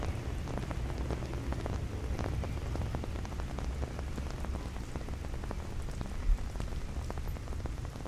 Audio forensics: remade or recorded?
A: recorded